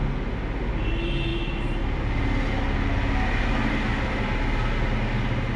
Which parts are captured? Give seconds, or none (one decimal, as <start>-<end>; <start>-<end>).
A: 0.0-5.6